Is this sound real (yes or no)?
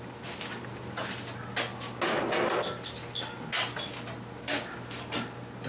yes